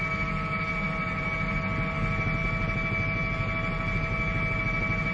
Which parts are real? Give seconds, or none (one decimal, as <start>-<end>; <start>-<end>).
0.0-5.1

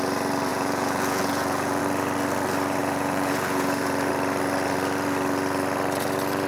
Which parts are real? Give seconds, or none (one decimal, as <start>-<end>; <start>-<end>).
0.0-0.5; 1.8-2.8; 4.1-6.5

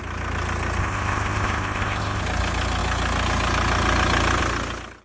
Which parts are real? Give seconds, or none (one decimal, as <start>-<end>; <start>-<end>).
0.0-0.8; 2.2-5.0

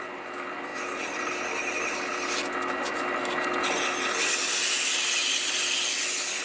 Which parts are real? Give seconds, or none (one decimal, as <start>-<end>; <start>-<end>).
0.0-6.4

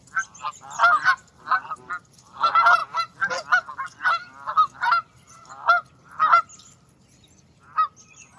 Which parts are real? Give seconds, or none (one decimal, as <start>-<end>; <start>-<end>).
0.0-8.4